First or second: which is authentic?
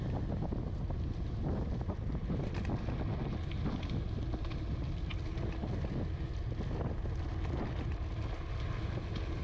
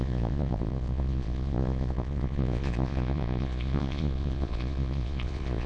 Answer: first